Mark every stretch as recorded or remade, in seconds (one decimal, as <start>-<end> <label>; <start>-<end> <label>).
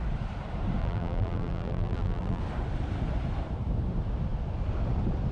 0.0-0.8 recorded; 0.8-2.4 remade; 2.4-5.3 recorded